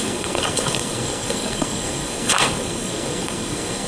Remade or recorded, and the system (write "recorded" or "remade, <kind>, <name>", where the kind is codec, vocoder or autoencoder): remade, codec, SNAC